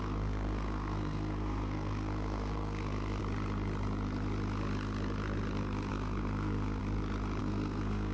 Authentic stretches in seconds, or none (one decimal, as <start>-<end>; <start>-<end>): 3.2-5.9; 6.8-7.4